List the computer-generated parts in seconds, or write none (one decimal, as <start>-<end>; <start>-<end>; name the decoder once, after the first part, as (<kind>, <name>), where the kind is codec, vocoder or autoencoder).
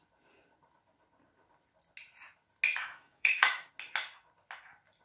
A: 2.8-3.7 (autoencoder, DAC-VAE)